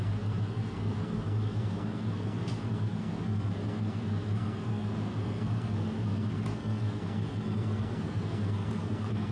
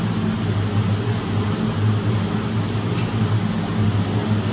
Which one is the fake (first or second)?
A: first